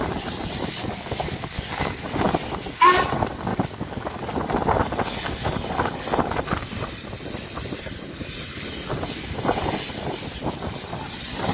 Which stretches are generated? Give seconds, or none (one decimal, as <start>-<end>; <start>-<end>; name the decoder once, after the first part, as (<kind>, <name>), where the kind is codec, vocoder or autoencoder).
0.8-1.9 (codec, DAC); 3.5-4.1